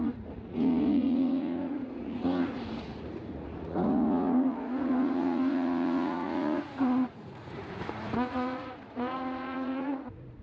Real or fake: fake